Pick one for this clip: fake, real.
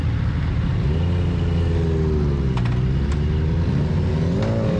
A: real